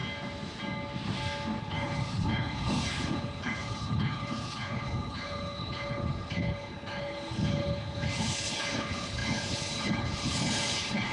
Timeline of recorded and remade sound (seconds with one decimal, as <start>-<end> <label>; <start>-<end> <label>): 0.0-1.6 recorded; 1.6-11.1 remade